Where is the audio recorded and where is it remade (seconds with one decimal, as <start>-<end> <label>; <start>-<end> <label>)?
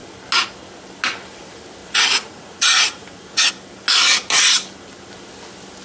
0.0-1.8 recorded; 1.8-3.5 remade; 3.5-5.8 recorded